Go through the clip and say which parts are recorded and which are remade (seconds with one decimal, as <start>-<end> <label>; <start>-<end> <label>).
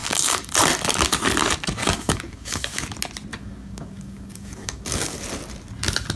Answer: 0.0-0.5 remade; 0.5-1.8 recorded; 1.8-2.9 remade; 2.9-3.3 recorded; 3.3-5.2 remade; 5.2-6.2 recorded